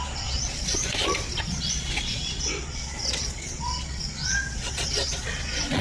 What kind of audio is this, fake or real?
fake